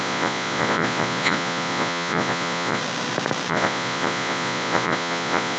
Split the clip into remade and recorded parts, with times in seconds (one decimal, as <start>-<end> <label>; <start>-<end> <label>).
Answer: 0.0-2.8 remade; 2.8-3.5 recorded; 3.5-5.6 remade